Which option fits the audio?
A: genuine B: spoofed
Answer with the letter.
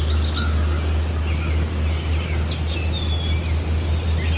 A